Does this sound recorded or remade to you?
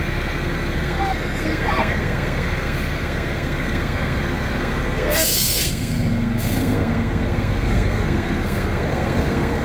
remade